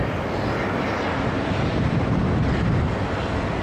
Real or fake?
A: real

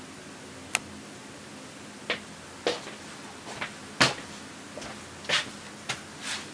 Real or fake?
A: real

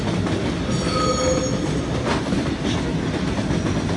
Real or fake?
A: real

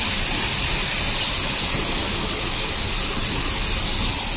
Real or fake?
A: real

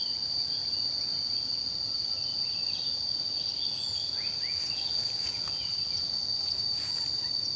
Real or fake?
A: real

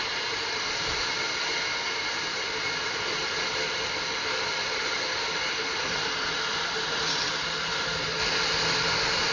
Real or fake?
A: real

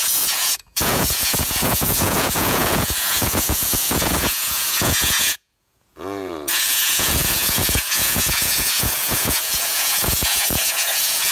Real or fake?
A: fake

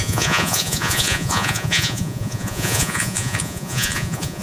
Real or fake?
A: fake